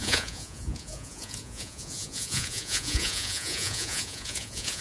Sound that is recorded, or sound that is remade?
remade